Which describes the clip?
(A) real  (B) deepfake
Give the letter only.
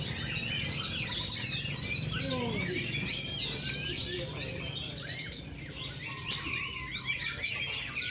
A